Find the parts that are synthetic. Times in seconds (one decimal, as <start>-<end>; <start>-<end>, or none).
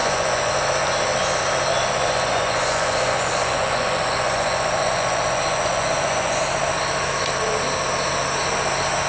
0.0-0.5; 1.7-6.4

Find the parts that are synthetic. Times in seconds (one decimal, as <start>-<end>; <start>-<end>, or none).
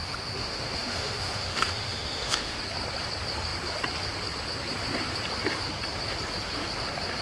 0.0-2.6